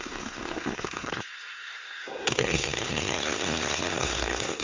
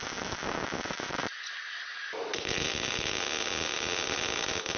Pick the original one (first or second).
second